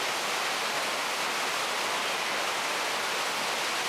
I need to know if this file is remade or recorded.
recorded